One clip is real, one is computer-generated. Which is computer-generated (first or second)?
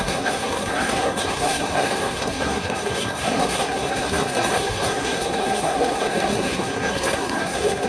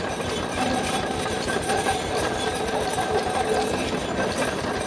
first